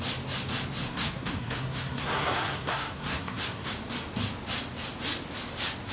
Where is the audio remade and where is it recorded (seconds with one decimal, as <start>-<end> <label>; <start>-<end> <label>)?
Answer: 0.0-0.8 recorded; 0.8-3.7 remade; 3.7-5.9 recorded